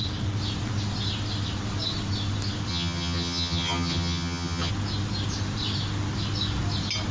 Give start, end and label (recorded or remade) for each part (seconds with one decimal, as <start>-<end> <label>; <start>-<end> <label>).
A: 0.0-2.7 recorded; 2.7-4.7 remade; 4.7-7.1 recorded